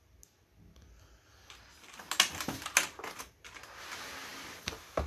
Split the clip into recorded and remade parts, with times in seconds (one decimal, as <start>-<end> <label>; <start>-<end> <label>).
0.0-5.1 recorded